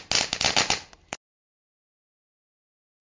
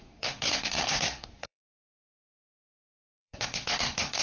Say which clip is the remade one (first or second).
second